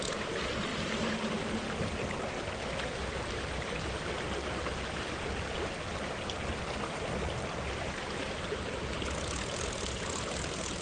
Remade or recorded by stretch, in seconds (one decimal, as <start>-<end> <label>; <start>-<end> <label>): 0.0-10.8 recorded